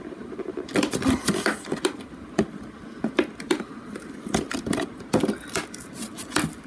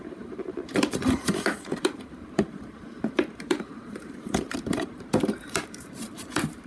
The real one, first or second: first